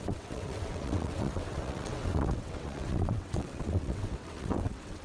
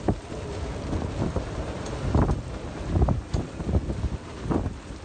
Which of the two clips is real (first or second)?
second